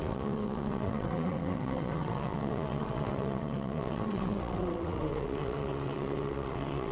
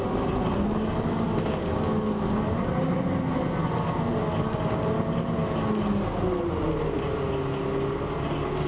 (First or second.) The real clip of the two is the second